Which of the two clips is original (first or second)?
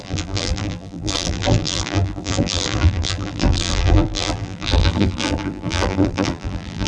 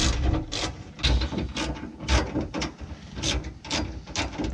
second